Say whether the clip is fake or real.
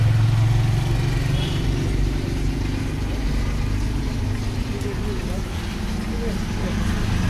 real